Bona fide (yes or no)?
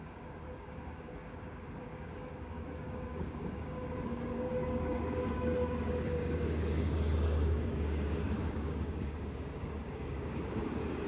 no